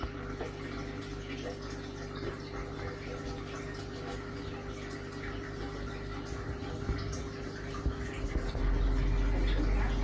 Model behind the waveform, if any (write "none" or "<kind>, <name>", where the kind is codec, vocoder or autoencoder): none